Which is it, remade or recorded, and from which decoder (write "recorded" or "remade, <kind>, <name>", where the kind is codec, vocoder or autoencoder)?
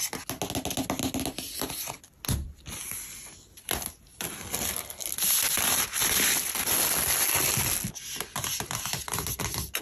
recorded